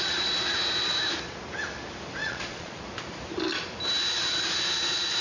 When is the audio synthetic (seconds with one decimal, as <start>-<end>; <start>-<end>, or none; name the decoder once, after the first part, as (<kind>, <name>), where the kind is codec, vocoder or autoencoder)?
2.2-2.8 (vocoder, Vocos)